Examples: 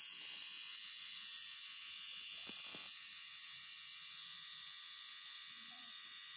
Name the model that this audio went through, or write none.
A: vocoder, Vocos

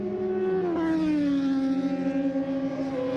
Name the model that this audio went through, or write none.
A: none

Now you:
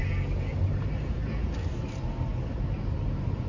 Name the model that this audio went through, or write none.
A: none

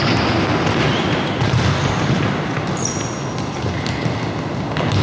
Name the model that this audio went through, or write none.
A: none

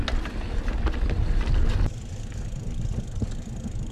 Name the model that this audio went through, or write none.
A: none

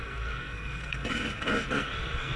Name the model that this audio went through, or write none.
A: codec, SNAC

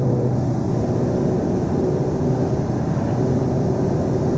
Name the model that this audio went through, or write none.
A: vocoder, BigVGAN v2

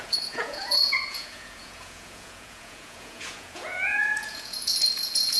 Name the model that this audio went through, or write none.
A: vocoder, Vocos